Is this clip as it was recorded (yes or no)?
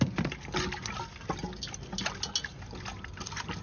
yes